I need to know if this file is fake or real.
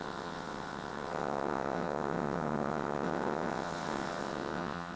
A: fake